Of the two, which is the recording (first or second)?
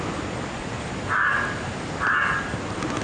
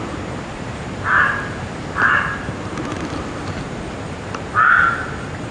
first